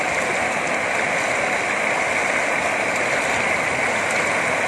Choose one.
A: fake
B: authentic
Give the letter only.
B